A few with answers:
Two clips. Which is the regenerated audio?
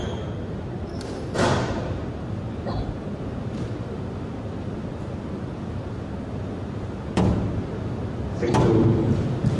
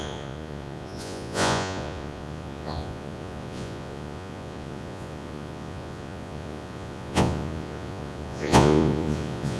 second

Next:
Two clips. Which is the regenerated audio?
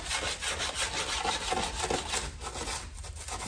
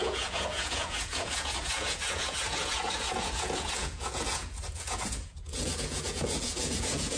second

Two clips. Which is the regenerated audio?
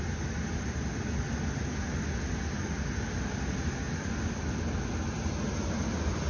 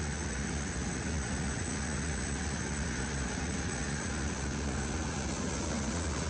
second